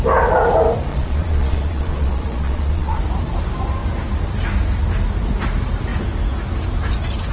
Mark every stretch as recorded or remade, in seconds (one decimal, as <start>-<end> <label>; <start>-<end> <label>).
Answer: 0.0-0.9 recorded; 0.9-3.0 remade; 3.0-7.3 recorded